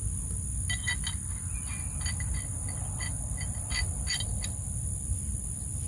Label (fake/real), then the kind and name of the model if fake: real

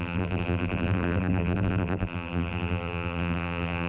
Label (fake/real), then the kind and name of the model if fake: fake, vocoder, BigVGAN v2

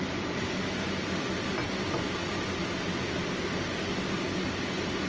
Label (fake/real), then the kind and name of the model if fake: real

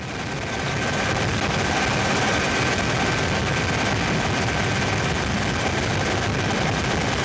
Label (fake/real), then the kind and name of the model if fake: real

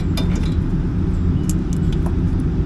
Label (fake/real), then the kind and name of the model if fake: real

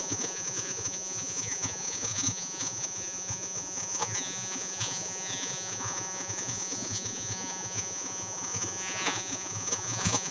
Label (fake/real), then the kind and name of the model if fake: fake, vocoder, Vocos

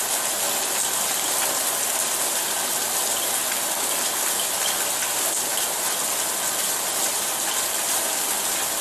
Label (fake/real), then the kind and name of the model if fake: real